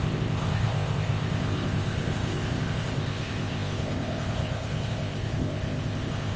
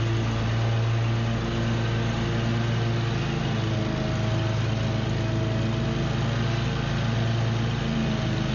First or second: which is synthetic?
first